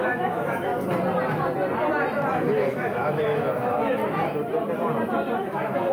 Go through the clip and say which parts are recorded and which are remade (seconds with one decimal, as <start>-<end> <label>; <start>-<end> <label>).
0.0-0.7 remade; 0.7-2.3 recorded; 2.3-4.0 remade; 4.0-5.4 recorded; 5.4-5.9 remade